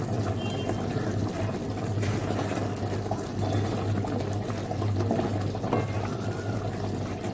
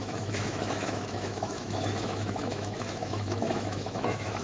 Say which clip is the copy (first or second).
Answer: second